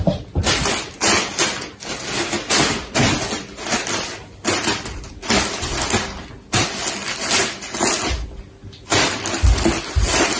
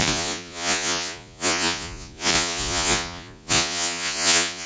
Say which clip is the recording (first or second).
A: first